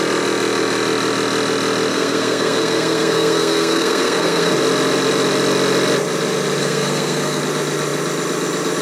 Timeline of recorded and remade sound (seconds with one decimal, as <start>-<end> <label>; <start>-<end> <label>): 0.0-1.9 recorded; 1.9-4.5 remade; 4.5-6.6 recorded; 6.6-7.4 remade; 7.4-8.8 recorded